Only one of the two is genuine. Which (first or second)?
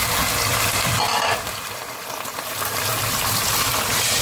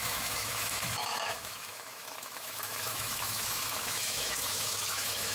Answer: first